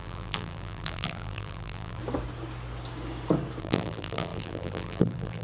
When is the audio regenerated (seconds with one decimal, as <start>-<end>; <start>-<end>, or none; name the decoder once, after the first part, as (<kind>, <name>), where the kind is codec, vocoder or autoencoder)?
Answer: 0.0-2.0 (vocoder, BigVGAN v2); 3.6-5.4